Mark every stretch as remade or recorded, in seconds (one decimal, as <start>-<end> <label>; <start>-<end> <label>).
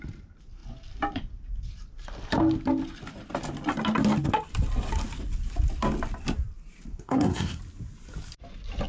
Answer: 0.0-6.9 recorded; 6.9-7.6 remade; 7.6-8.9 recorded